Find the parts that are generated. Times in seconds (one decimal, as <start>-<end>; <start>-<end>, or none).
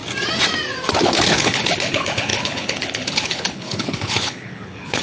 1.0-5.0